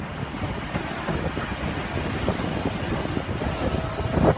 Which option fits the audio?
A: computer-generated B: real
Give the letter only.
B